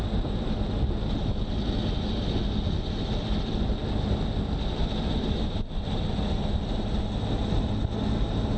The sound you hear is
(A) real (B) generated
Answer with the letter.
A